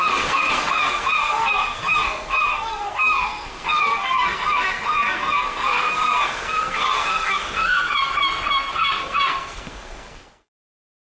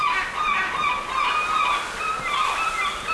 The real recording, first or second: second